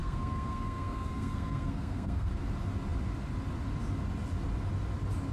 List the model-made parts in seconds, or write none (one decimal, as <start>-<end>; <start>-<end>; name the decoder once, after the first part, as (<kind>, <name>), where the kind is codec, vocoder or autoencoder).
0.0-2.3 (codec, SNAC)

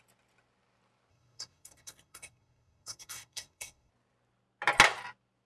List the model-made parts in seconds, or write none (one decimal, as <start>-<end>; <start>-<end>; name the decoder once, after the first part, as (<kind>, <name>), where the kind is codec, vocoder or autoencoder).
1.1-3.9 (codec, SNAC)

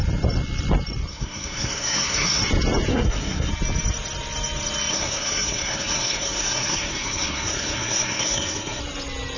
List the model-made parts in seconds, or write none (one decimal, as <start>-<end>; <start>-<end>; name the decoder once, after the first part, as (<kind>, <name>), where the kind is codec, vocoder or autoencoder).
1.1-2.4 (codec, SNAC); 2.9-3.5; 4.9-8.8

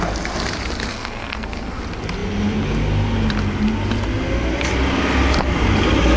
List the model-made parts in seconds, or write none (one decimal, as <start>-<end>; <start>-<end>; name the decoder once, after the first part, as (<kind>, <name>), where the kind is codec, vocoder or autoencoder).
0.9-1.7 (codec, SNAC)

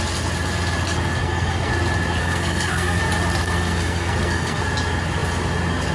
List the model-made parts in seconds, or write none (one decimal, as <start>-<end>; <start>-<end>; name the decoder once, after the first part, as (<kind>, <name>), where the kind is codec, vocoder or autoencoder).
1.2-1.7 (codec, SNAC); 2.2-3.0; 3.4-4.6

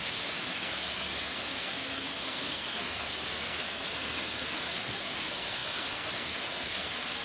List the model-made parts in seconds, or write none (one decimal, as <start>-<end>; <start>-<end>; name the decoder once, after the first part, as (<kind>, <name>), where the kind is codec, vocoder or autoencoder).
0.0-7.2 (codec, SNAC)

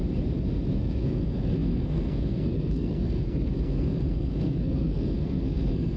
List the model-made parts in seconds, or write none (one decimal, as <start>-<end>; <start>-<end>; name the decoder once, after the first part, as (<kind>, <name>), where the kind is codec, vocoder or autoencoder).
0.8-6.0 (codec, SNAC)